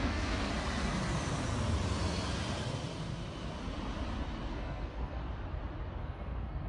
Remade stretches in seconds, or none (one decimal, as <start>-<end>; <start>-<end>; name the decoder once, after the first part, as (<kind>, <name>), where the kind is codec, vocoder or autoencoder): 0.0-0.5 (codec, SNAC); 4.5-5.2; 6.0-6.7